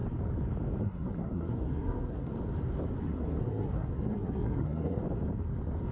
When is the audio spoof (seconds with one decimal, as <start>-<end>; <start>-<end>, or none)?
0.8-2.3; 3.0-5.0